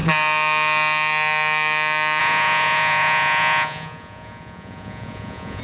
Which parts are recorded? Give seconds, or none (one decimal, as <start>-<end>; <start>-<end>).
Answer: 0.0-2.2